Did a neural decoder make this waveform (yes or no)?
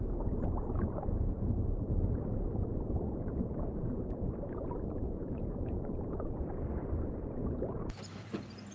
yes